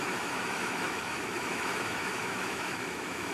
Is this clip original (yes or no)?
no